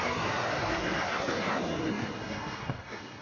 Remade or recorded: remade